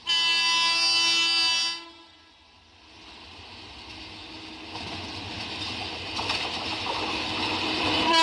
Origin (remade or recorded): recorded